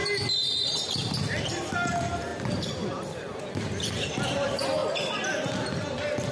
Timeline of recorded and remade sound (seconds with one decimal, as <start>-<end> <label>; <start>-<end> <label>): 0.0-6.3 recorded

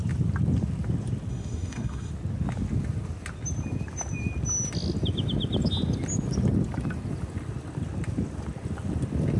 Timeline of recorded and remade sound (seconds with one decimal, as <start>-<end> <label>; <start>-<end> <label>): 0.0-1.3 recorded; 1.3-2.1 remade; 2.1-9.4 recorded

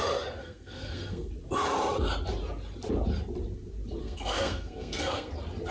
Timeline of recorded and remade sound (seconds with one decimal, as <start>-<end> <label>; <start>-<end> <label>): 0.0-0.4 recorded; 0.4-1.3 remade; 1.3-4.0 recorded; 4.0-5.3 remade; 5.3-5.7 recorded

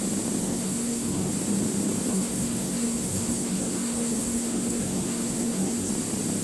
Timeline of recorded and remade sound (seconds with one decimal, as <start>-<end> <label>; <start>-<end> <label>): 0.0-0.4 recorded; 0.4-1.3 remade; 1.3-2.1 recorded; 2.1-5.9 remade; 5.9-6.4 recorded

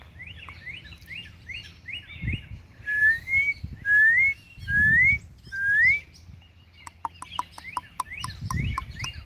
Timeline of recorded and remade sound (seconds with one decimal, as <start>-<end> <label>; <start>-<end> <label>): 0.0-9.3 recorded

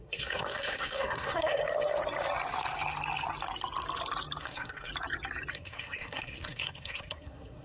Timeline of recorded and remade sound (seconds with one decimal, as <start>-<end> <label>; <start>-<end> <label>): 0.0-1.6 remade; 1.6-4.4 recorded; 4.4-4.9 remade; 4.9-5.5 recorded; 5.5-7.6 remade

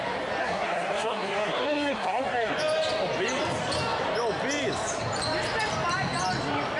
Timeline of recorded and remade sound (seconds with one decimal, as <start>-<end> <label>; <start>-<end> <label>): 0.0-0.4 recorded; 0.4-2.5 remade; 2.5-6.8 recorded